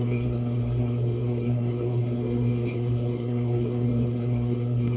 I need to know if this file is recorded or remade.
remade